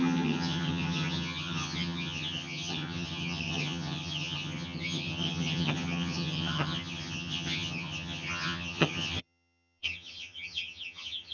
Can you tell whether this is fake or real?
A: fake